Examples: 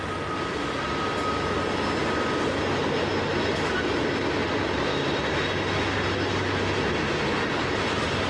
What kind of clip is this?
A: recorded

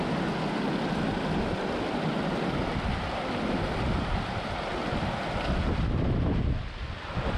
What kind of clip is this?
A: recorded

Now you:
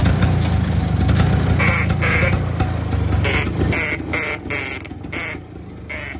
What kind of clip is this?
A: recorded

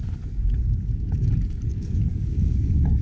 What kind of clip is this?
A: remade